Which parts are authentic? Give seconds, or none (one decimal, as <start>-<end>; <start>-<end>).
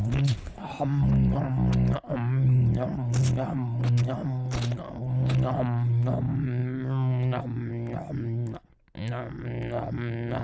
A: 0.0-10.4